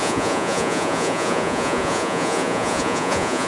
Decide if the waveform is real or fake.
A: fake